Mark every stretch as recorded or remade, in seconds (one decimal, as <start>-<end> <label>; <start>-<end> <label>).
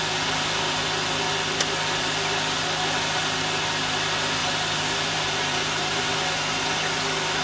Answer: 0.0-4.4 recorded; 4.4-6.6 remade; 6.6-7.4 recorded